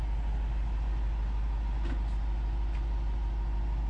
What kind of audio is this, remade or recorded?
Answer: recorded